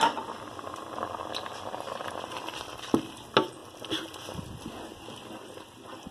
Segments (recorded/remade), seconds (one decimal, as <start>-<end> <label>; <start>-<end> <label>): 0.0-6.1 recorded